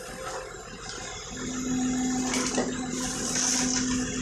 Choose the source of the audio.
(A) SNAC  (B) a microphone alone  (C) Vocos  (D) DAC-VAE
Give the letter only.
B